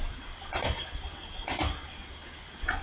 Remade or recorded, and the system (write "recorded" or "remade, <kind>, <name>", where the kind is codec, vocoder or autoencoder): recorded